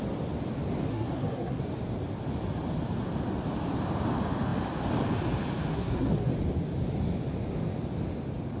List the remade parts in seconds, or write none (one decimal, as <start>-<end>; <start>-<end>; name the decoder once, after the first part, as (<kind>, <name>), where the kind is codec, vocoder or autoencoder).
0.9-1.6 (codec, SNAC); 5.7-6.3